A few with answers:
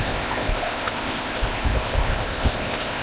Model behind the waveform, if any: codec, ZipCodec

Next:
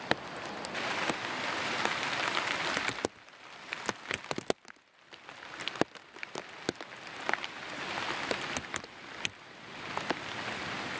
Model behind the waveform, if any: none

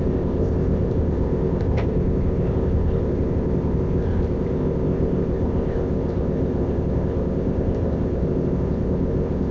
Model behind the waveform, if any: codec, ZipCodec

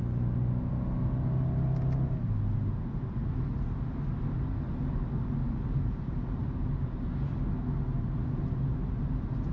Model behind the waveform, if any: none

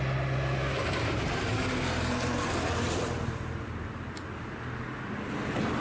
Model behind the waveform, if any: none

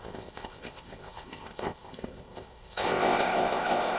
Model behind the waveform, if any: codec, ZipCodec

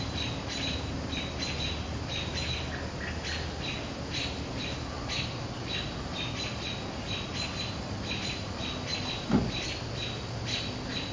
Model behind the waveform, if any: none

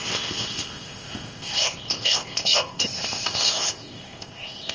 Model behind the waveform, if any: codec, ZipCodec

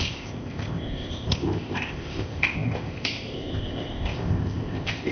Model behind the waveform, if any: codec, ZipCodec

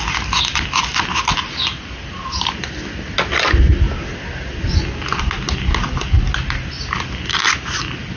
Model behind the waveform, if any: none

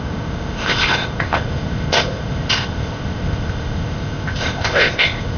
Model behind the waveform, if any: codec, ZipCodec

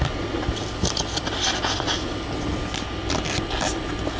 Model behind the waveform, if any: none